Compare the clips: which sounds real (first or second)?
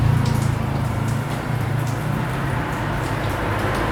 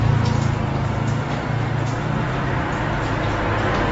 second